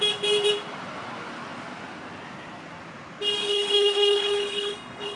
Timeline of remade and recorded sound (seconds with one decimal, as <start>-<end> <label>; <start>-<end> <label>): 0.0-3.4 recorded; 3.4-5.2 remade

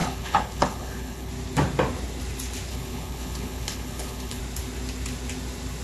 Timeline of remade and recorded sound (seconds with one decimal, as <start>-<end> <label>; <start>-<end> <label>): 0.0-1.3 remade; 1.3-2.7 recorded; 2.7-4.4 remade; 4.4-5.8 recorded

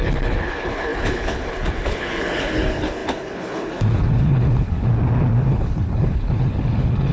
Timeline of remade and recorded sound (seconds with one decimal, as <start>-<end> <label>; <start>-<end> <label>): 0.0-4.9 remade; 4.9-5.5 recorded; 5.5-7.1 remade

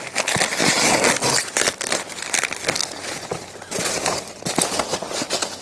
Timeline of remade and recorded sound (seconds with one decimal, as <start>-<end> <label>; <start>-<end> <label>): 0.0-5.6 recorded